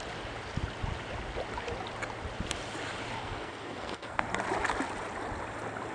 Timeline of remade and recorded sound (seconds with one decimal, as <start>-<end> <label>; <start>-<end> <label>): 0.0-3.2 recorded; 3.2-4.2 remade; 4.2-5.9 recorded